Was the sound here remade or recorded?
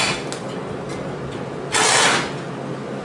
recorded